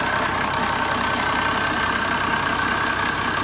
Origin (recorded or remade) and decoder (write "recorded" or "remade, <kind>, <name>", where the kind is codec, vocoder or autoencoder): recorded